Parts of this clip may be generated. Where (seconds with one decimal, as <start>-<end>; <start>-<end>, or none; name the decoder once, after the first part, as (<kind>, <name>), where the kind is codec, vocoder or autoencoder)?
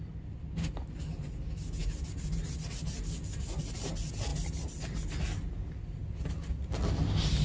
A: none